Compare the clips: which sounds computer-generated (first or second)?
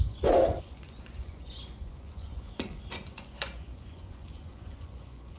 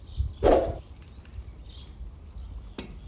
first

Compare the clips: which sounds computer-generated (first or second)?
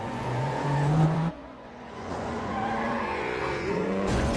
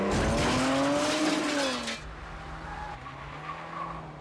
first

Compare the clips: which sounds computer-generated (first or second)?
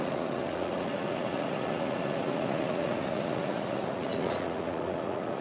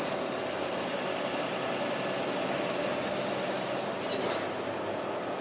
first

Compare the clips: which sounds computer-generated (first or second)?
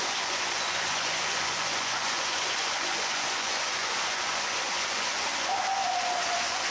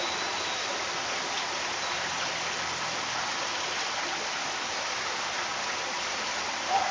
first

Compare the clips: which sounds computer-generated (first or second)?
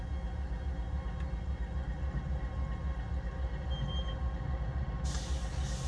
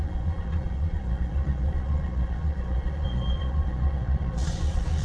second